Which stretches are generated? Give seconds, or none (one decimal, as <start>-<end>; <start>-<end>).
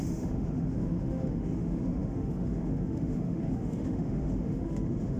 0.0-5.2